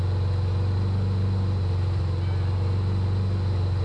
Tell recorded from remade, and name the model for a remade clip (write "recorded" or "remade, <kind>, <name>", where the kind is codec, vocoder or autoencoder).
recorded